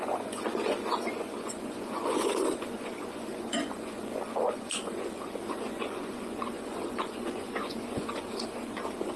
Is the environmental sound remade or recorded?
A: remade